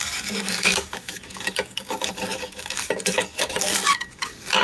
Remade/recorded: remade